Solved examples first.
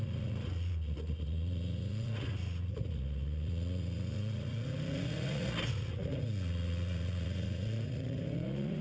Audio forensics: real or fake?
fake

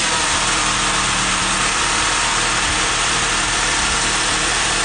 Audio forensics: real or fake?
fake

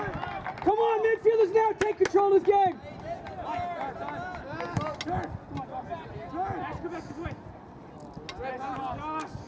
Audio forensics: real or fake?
real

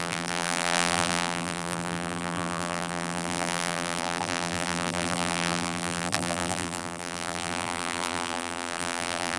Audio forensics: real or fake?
fake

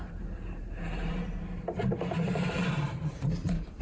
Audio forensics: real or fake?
fake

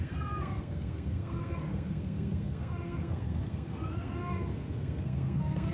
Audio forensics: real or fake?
fake